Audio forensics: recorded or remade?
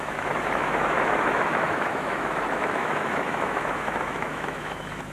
remade